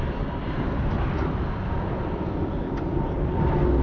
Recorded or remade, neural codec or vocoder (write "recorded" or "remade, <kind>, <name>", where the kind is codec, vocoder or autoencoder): recorded